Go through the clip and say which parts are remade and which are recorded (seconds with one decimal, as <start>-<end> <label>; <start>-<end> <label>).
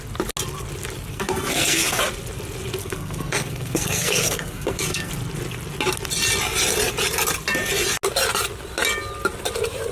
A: 0.0-1.1 recorded; 1.1-2.0 remade; 2.0-2.8 recorded; 2.8-5.1 remade; 5.1-9.9 recorded